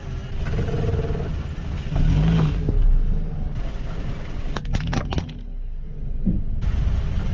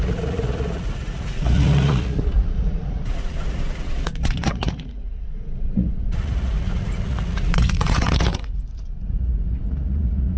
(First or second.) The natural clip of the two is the first